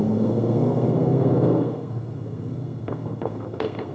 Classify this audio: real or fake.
fake